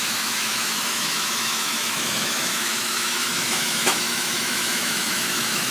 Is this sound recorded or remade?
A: remade